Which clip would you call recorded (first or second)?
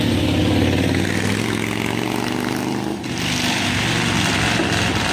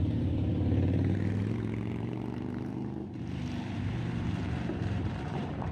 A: first